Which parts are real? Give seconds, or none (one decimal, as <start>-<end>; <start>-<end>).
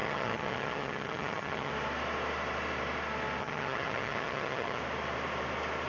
1.7-3.4; 4.8-5.9